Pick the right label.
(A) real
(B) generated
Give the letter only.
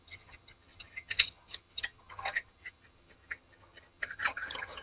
B